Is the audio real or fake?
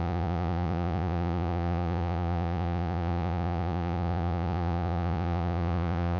fake